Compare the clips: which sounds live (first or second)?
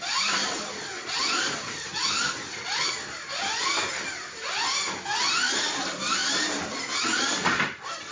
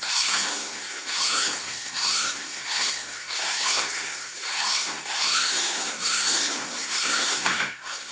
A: first